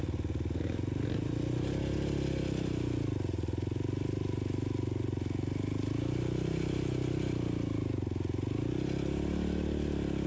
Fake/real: real